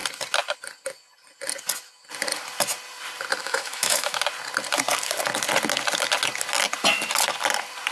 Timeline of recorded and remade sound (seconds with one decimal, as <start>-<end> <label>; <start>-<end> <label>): 0.0-3.4 recorded; 3.4-4.2 remade; 4.2-7.9 recorded